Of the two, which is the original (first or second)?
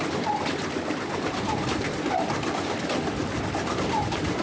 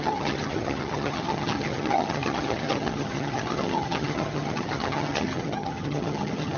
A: first